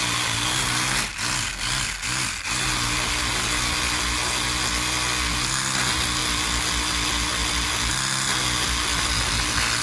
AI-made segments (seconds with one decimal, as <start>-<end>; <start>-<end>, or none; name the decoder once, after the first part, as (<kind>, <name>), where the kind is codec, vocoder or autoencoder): none